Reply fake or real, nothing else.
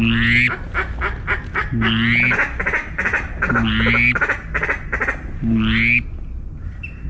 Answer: real